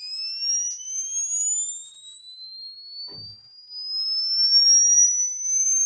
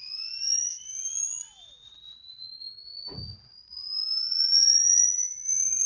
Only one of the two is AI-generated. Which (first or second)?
second